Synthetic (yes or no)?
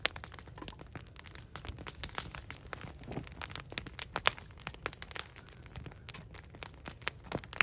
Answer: no